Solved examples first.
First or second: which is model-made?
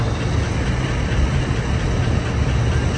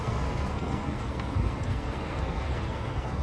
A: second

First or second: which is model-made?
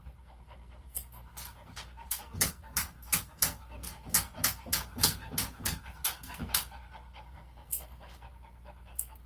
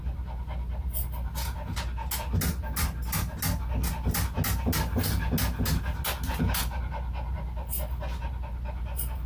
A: first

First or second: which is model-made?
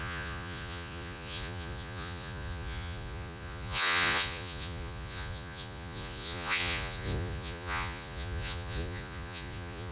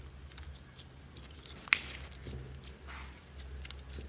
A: first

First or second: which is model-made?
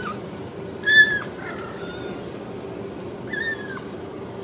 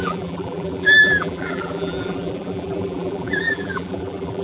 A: second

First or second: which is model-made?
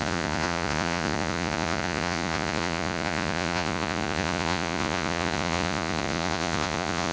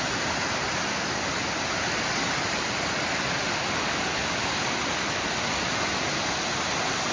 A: first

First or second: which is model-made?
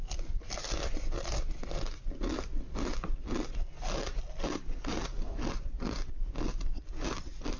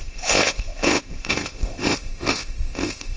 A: second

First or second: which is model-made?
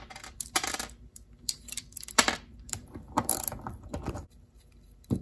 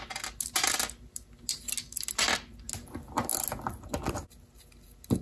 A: first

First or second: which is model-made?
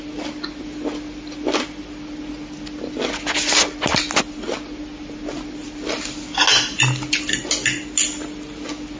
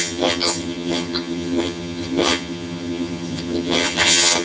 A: second